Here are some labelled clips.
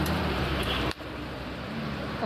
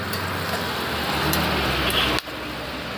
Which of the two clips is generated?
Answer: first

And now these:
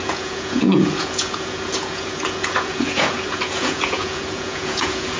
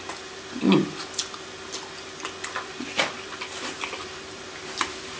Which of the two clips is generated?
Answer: first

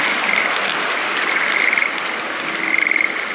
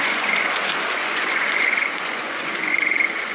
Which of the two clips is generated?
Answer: second